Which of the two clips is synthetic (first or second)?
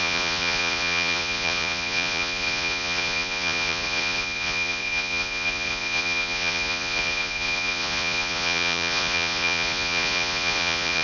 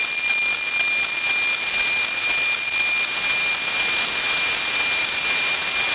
first